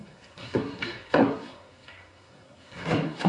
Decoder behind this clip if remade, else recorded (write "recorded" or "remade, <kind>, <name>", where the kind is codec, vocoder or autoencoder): remade, codec, SNAC